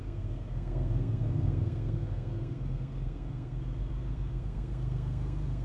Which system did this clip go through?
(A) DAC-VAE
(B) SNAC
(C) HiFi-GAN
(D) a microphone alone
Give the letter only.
B